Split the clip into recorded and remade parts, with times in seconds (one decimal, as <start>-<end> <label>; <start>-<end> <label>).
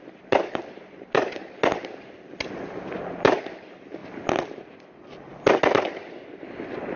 0.0-7.0 recorded